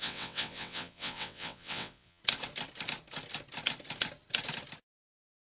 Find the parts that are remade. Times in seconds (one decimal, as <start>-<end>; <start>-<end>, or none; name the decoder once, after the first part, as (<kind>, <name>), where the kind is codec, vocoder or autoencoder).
0.0-2.2 (vocoder, WaveNeXt)